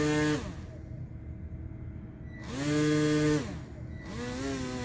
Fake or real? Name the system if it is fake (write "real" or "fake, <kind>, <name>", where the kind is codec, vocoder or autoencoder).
real